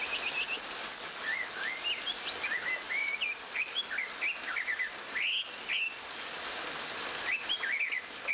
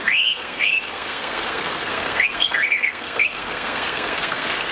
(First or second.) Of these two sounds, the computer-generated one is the second